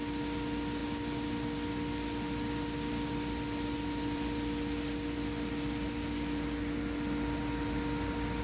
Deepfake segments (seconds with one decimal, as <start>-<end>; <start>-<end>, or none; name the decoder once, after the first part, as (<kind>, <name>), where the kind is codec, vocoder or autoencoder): none